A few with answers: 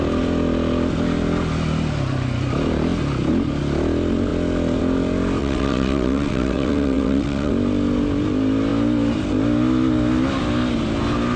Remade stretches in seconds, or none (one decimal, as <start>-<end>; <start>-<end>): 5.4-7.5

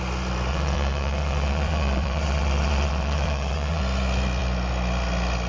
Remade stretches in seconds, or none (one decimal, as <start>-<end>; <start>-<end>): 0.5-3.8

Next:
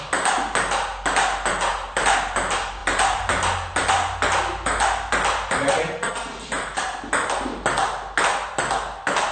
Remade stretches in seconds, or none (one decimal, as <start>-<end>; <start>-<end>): none

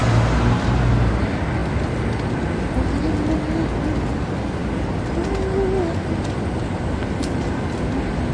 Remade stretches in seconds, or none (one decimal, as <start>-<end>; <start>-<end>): none

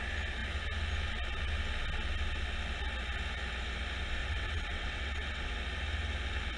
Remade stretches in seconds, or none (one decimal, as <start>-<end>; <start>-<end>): 4.2-5.6